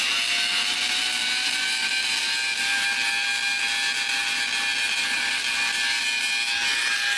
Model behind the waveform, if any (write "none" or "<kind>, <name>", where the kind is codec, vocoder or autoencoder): none